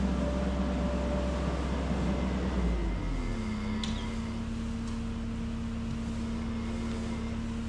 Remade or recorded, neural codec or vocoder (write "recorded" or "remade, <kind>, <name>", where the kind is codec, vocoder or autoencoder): recorded